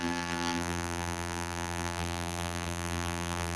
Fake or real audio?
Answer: fake